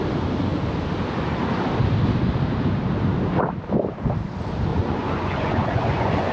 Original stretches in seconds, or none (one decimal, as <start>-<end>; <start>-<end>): 0.0-4.7